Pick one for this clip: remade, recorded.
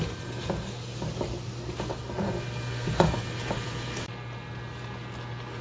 recorded